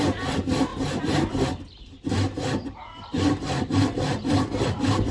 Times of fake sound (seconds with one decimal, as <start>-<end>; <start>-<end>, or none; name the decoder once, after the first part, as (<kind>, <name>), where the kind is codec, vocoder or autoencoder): none